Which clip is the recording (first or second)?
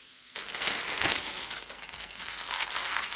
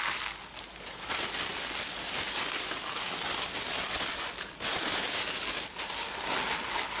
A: second